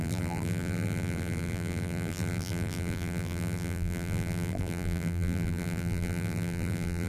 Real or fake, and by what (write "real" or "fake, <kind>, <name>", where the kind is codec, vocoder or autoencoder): fake, vocoder, BigVGAN v2